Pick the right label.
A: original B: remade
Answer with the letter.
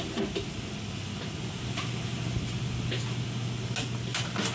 A